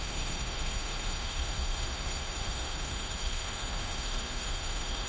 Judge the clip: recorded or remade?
remade